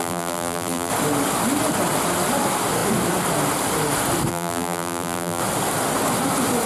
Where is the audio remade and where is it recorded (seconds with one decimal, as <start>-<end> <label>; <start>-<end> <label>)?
0.0-0.9 remade; 0.9-4.3 recorded; 4.3-5.4 remade; 5.4-6.7 recorded